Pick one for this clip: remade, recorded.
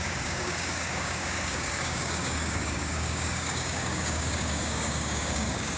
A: remade